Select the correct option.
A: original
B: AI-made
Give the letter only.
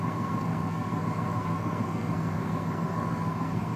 B